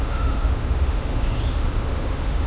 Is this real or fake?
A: fake